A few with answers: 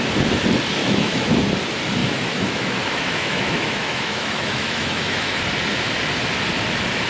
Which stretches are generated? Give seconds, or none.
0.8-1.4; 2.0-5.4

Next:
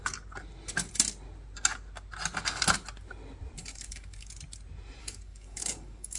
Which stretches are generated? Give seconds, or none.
3.6-4.3; 5.0-6.2